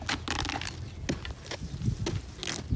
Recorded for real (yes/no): yes